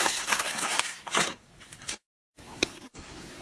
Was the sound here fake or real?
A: fake